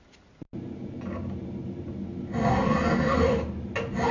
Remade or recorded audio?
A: recorded